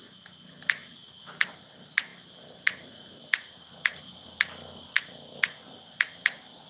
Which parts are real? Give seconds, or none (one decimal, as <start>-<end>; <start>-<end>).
0.0-6.7